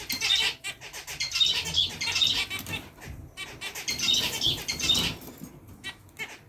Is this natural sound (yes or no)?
yes